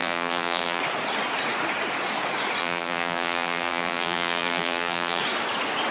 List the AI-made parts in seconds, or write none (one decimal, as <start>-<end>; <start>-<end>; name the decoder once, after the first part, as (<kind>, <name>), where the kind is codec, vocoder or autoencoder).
0.0-0.8 (vocoder, BigVGAN v2); 2.6-5.2